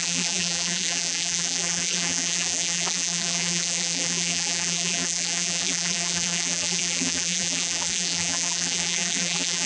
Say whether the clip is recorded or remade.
remade